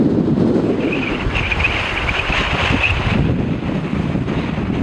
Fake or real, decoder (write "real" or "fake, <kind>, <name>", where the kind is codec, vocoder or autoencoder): real